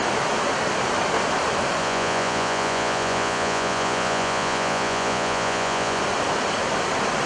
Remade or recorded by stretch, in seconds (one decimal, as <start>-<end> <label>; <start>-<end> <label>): 0.0-1.8 recorded; 1.8-6.0 remade; 6.0-7.3 recorded